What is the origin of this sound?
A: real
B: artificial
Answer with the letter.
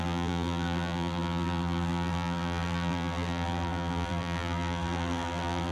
B